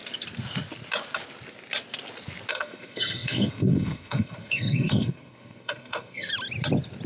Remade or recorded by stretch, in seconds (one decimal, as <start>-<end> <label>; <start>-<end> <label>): 0.0-2.5 recorded; 2.5-6.3 remade; 6.3-7.1 recorded